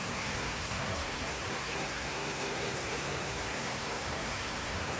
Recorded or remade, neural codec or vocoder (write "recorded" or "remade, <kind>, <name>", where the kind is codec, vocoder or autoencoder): remade, codec, SNAC